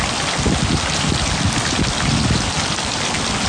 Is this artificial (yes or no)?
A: no